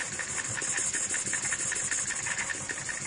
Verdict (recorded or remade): recorded